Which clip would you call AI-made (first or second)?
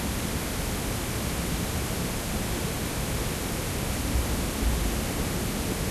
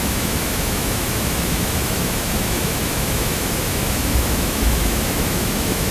second